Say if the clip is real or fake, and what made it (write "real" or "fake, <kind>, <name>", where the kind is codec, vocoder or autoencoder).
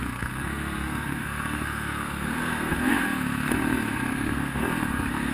fake, codec, SNAC